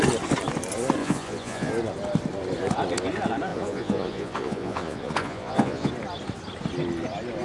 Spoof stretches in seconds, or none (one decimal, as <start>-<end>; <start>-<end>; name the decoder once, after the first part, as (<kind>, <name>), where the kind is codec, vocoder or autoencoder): 1.0-1.7 (vocoder, Vocos); 3.5-5.9